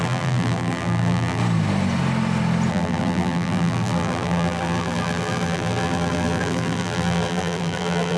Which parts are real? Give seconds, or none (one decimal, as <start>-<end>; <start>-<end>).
1.4-2.7